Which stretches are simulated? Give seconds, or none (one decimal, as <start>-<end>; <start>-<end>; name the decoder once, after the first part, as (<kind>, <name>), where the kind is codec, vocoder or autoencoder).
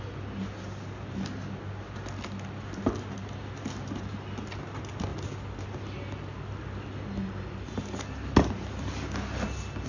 none